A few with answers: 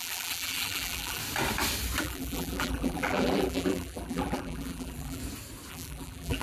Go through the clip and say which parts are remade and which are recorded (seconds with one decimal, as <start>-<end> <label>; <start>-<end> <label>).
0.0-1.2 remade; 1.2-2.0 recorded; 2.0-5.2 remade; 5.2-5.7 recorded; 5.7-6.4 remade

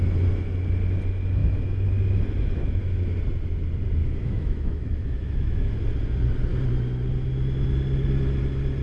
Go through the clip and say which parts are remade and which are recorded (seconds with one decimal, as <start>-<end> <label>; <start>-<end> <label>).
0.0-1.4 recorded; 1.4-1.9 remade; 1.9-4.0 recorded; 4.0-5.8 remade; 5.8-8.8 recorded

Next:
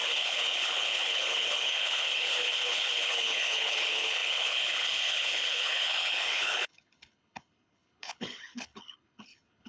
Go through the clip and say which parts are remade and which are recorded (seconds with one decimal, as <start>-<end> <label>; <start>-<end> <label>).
0.0-9.7 remade

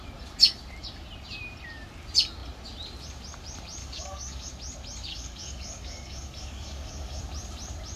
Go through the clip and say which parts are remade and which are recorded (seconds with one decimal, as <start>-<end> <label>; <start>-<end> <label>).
0.0-3.8 recorded; 3.8-4.5 remade; 4.5-5.1 recorded; 5.1-7.2 remade; 7.2-8.0 recorded